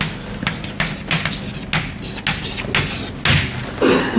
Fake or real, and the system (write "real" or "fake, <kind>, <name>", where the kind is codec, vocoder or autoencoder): real